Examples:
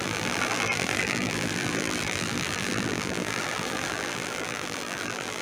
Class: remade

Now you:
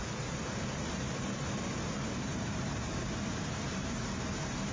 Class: remade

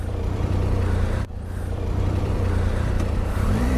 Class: remade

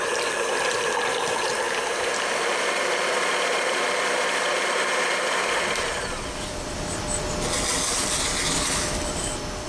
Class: recorded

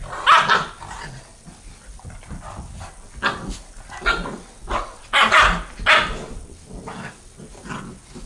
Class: recorded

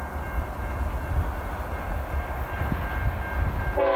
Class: recorded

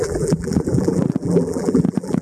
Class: remade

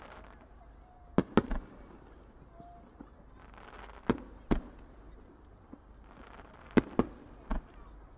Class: recorded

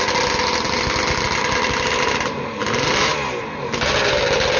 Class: recorded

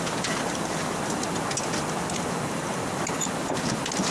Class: recorded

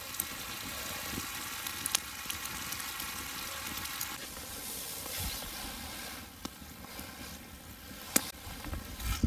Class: remade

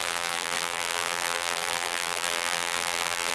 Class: remade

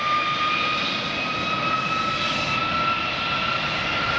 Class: recorded